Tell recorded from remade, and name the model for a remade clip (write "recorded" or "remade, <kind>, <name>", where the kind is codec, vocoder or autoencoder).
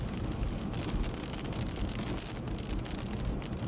recorded